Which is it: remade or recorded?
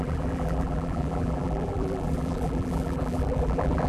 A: remade